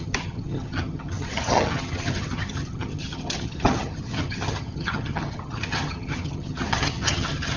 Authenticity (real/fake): fake